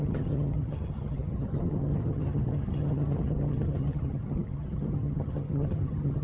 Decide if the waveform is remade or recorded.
remade